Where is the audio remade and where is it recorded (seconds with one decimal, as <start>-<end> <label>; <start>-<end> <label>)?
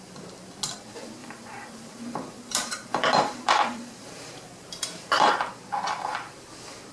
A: 0.0-1.2 recorded; 1.2-5.3 remade; 5.3-6.9 recorded